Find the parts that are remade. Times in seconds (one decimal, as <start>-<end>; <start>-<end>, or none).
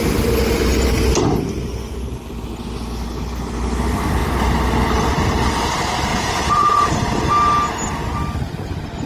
6.1-6.9